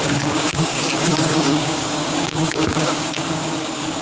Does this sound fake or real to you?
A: fake